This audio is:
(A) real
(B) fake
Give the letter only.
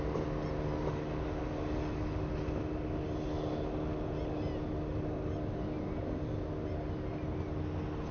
A